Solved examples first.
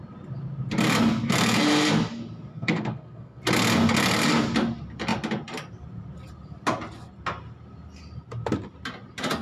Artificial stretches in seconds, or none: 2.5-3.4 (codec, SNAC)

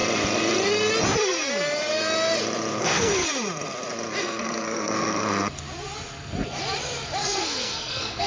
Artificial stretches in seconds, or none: 2.8-3.3 (codec, SNAC); 4.2-5.6; 7.2-8.3

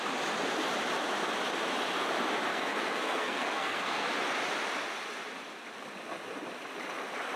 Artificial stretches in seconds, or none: 2.5-4.1 (codec, SNAC)

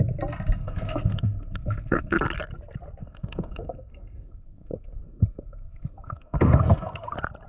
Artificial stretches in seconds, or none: 0.6-2.2 (codec, SNAC); 3.0-7.1

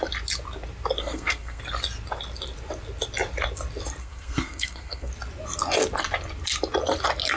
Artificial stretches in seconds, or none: 1.0-1.6 (codec, SNAC); 4.0-5.1

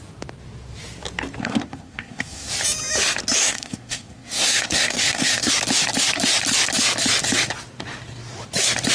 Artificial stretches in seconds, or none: 1.4-2.5 (codec, SNAC); 3.4-5.5

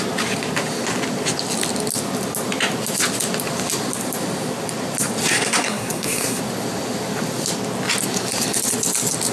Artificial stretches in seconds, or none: 5.2-6.4 (codec, SNAC)